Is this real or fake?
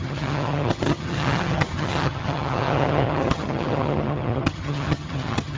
fake